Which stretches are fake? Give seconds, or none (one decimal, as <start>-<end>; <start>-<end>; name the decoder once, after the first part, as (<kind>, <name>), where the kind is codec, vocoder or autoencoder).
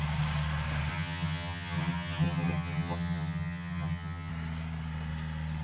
0.9-4.3 (vocoder, HiFi-GAN)